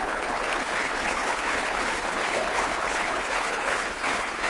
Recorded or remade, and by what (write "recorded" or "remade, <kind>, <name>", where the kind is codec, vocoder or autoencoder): remade, codec, HILCodec